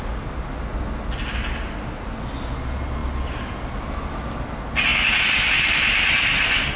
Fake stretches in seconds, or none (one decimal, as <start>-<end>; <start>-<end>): none